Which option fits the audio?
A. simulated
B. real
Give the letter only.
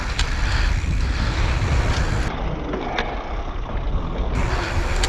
B